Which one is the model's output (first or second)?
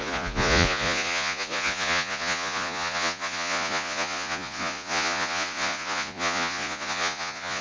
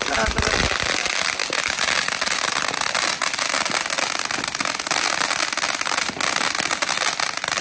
first